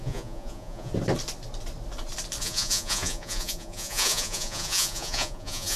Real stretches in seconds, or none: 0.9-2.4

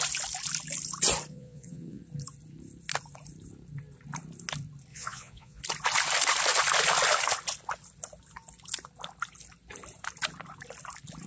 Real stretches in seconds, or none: 0.0-1.3; 2.0-4.9; 5.6-11.3

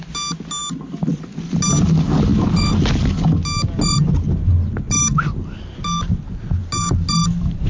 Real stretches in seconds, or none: 0.0-7.7

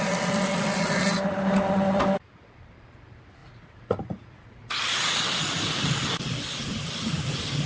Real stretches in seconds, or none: 0.0-3.4; 5.2-7.7